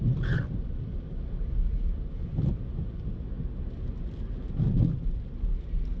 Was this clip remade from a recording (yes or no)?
no